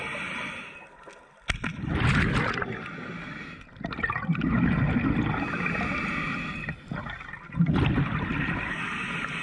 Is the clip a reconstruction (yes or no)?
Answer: no